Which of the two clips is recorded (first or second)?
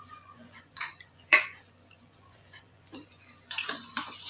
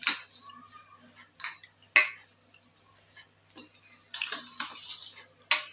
second